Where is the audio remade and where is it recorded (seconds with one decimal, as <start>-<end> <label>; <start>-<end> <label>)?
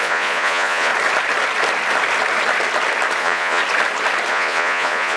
0.0-0.9 remade; 0.9-3.2 recorded; 3.2-3.6 remade; 3.6-4.3 recorded; 4.3-5.2 remade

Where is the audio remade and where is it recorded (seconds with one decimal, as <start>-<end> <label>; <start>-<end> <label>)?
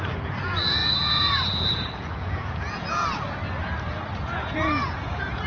0.0-3.4 remade; 3.4-4.2 recorded; 4.2-5.5 remade